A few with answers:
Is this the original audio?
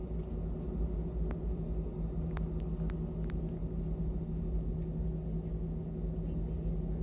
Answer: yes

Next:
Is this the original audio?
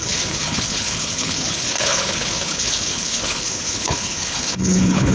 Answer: no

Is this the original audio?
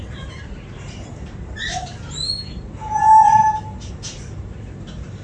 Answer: no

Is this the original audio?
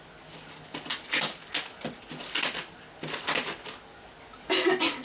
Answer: yes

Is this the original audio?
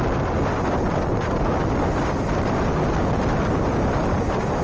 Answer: yes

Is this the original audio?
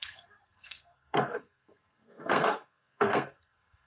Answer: no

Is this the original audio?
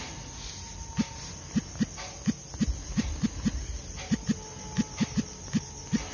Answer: yes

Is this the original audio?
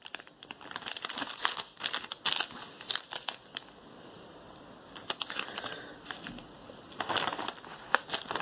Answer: yes